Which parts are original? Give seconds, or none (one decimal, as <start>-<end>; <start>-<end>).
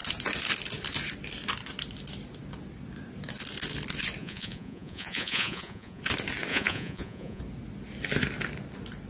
0.0-4.2; 6.0-6.5; 7.4-9.1